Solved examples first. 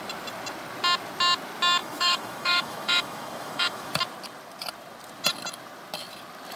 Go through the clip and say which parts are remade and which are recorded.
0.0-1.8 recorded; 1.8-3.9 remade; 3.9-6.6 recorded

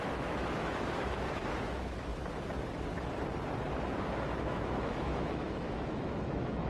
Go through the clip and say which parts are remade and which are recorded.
0.0-2.1 remade; 2.1-4.2 recorded; 4.2-6.7 remade